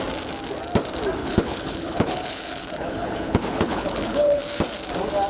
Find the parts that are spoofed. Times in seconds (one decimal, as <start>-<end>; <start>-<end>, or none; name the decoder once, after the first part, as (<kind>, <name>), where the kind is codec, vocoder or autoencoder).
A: 1.2-4.4 (codec, HILCodec)